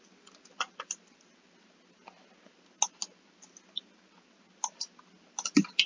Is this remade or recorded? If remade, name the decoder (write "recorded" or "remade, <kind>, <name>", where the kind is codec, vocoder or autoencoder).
recorded